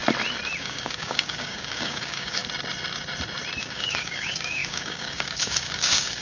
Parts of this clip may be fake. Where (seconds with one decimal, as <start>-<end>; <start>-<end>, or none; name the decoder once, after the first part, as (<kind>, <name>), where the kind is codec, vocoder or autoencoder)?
0.6-2.4 (codec, DAC); 3.6-6.2

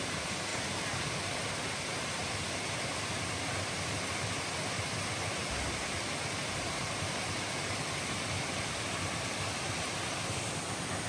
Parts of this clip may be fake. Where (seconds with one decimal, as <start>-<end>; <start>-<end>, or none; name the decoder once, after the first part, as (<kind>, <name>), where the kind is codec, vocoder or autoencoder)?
none

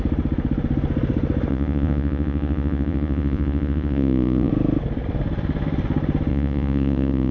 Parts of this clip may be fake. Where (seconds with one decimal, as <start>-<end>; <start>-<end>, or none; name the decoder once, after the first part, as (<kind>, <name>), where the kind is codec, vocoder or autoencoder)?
1.5-4.5 (vocoder, Vocos); 6.3-7.3

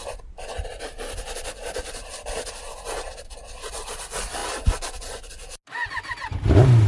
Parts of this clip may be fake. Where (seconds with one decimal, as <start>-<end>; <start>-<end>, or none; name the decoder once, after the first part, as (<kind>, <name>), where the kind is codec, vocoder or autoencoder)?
none

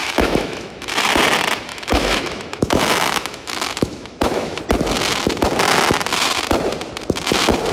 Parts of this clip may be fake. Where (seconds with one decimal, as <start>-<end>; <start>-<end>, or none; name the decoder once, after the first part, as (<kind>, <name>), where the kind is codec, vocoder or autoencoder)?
0.0-0.9 (autoencoder, DAC-VAE); 1.7-4.6